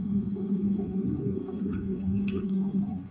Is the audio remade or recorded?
remade